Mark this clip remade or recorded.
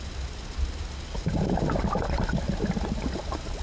recorded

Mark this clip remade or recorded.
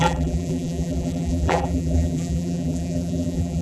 remade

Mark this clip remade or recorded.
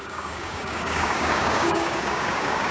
remade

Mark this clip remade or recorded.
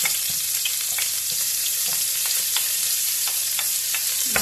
remade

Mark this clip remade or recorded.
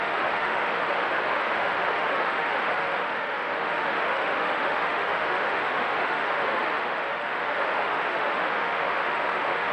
remade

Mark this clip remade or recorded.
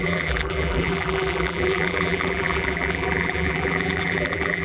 remade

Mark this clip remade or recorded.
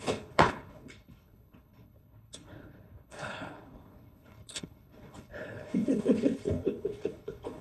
remade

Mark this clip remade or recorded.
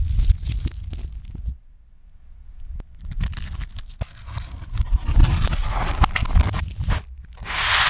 recorded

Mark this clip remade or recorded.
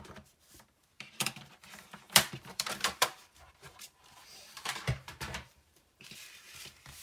remade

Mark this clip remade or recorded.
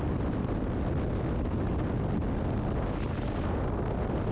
recorded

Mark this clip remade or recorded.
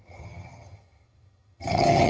remade